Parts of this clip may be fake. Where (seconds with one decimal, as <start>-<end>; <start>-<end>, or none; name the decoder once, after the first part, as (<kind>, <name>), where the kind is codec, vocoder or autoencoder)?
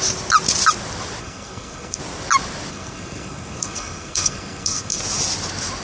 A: 1.2-2.0 (codec, SNAC); 2.7-5.0